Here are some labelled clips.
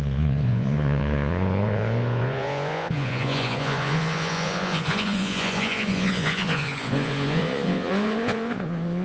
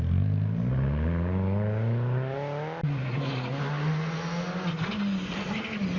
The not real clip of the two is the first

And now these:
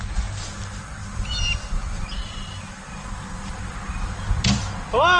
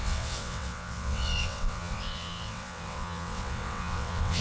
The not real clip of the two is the second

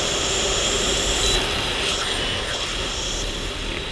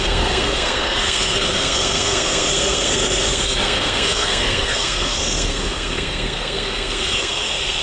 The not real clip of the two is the second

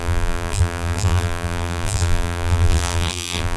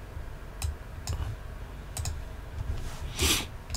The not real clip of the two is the first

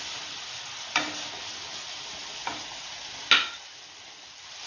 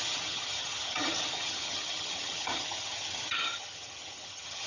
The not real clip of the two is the second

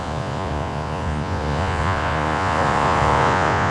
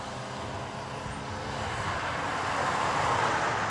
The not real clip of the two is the first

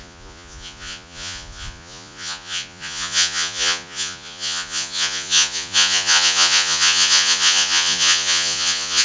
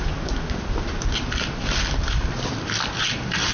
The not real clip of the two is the first